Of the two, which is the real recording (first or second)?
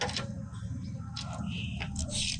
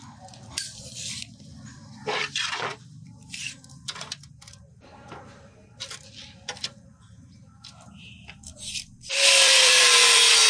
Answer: first